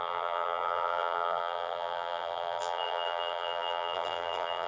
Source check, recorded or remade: remade